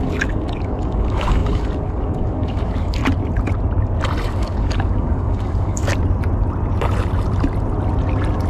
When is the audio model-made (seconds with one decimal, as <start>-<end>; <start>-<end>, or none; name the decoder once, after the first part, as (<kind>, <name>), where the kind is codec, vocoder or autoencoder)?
0.0-3.0 (codec, DAC); 4.3-5.9